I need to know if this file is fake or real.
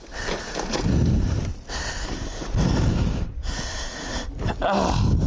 real